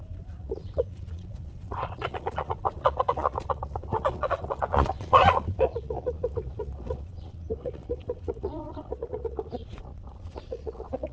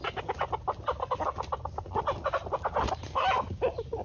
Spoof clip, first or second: first